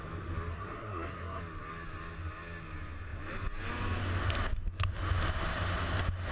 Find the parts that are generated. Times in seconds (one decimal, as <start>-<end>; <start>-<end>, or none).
0.5-1.4